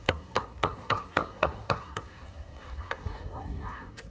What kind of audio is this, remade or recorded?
remade